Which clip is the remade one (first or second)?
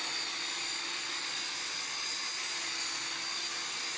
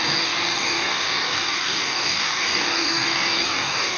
second